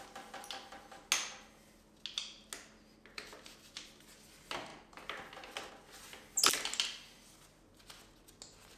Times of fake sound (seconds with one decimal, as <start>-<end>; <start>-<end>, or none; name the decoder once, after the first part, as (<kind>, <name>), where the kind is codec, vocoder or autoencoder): none

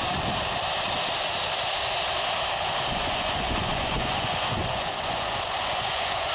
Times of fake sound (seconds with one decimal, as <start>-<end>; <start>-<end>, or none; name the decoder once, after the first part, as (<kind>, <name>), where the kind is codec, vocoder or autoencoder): 2.9-6.3 (vocoder, Vocos)

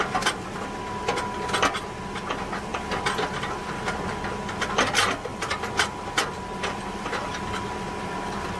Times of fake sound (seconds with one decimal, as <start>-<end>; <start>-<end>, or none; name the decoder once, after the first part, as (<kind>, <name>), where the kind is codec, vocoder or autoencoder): 5.3-7.5 (vocoder, BigVGAN v2)

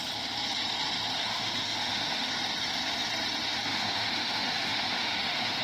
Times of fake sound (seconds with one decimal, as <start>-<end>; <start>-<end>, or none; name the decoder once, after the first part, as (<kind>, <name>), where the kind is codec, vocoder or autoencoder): 1.1-2.3 (autoencoder, DAC-VAE); 3.7-5.6

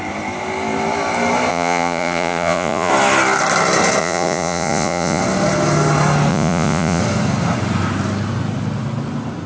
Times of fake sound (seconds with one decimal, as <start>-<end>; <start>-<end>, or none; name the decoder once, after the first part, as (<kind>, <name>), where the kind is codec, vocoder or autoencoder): 1.5-2.9 (vocoder, Vocos); 4.0-5.2; 6.3-7.0

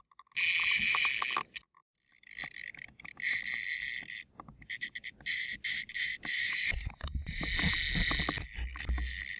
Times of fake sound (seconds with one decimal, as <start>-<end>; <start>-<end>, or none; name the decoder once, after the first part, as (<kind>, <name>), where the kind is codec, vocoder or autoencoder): none

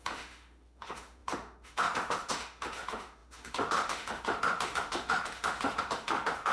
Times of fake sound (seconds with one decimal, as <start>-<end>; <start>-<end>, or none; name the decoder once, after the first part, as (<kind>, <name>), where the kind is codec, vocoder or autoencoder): 0.0-6.5 (autoencoder, DAC-VAE)

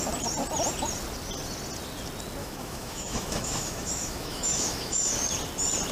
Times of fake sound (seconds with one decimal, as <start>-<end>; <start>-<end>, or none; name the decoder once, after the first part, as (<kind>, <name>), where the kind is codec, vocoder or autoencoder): 2.4-5.1 (autoencoder, DAC-VAE)